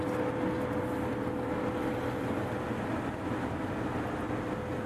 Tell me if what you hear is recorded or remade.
recorded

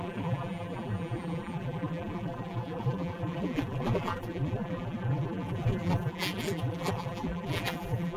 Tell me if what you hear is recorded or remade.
remade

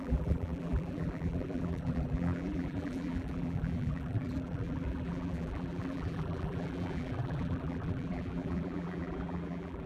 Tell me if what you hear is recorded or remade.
remade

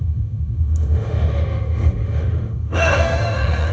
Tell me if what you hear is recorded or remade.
remade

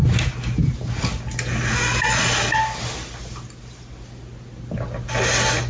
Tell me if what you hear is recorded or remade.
recorded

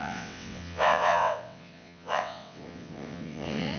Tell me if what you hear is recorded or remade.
remade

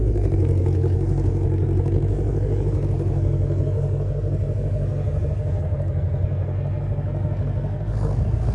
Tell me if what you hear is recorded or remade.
remade